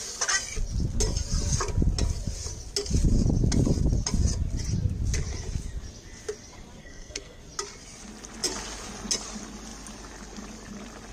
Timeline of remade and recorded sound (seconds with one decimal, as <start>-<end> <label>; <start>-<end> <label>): 0.0-6.8 recorded; 6.8-7.4 remade; 7.4-11.1 recorded